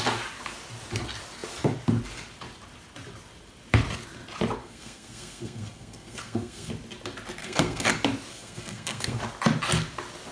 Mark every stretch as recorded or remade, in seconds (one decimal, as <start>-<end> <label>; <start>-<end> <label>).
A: 0.0-4.6 recorded; 4.6-6.7 remade; 6.7-7.4 recorded; 7.4-7.9 remade; 7.9-8.3 recorded; 8.3-9.2 remade; 9.2-10.3 recorded